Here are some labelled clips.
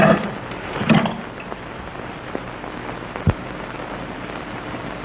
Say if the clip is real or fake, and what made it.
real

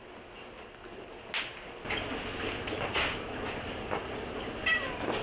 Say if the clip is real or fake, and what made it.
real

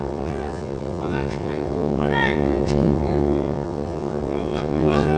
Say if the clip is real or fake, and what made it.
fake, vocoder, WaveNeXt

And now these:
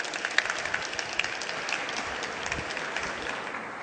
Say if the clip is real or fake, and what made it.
real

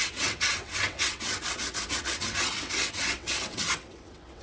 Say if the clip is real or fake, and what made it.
fake, vocoder, WaveNeXt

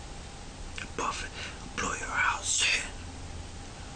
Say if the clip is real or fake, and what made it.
real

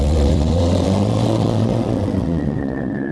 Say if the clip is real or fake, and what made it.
fake, vocoder, WaveNeXt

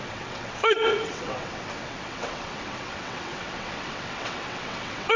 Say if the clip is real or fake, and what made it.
fake, vocoder, WaveNeXt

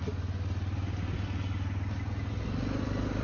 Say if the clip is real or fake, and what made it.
real